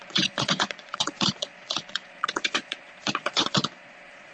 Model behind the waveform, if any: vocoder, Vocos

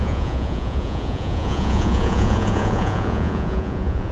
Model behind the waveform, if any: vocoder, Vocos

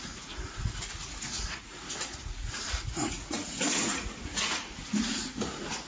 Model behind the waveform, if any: vocoder, Vocos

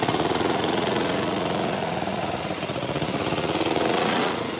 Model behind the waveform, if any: vocoder, Vocos